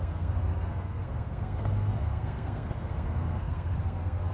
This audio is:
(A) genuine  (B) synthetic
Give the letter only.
B